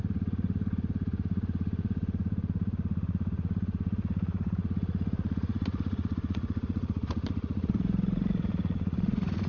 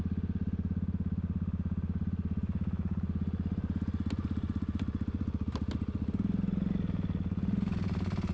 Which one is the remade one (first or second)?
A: first